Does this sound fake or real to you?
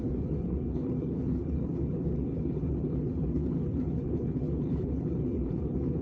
fake